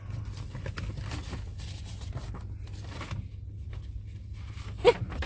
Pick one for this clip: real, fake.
real